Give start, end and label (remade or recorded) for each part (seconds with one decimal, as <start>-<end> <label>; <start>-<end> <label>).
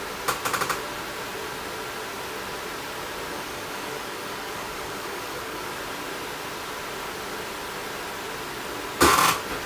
0.0-3.3 recorded; 3.3-5.7 remade; 5.7-9.7 recorded